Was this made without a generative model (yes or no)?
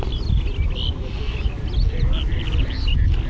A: yes